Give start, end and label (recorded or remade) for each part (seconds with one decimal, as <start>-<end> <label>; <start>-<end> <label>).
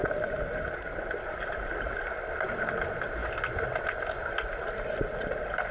0.0-0.7 remade; 0.7-5.7 recorded